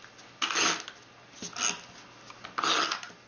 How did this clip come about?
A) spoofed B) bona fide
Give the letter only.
B